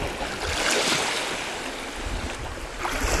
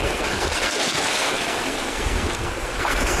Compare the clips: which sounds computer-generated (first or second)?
second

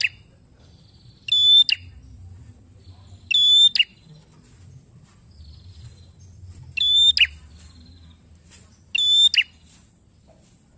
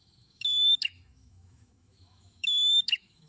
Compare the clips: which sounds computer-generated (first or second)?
second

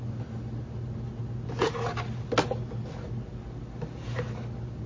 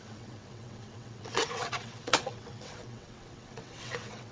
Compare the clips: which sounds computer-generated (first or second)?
second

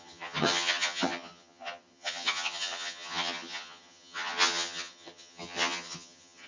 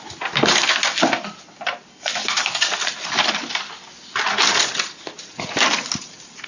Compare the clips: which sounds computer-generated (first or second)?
first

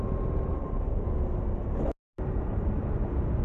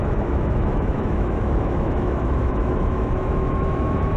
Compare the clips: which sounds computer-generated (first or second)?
second